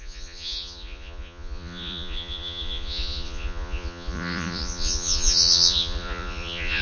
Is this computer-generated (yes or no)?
yes